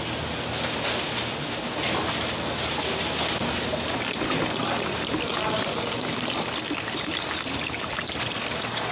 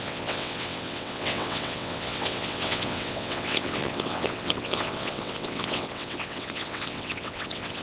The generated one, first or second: second